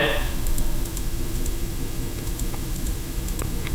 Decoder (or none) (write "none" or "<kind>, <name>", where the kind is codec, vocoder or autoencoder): autoencoder, DAC-VAE